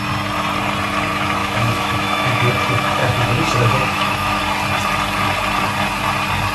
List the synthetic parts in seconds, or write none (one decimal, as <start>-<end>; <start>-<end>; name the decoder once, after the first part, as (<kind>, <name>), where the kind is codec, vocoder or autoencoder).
1.4-2.5 (autoencoder, DAC-VAE); 3.0-4.4